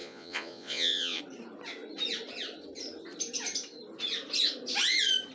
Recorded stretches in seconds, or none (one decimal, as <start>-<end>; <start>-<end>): 1.2-5.3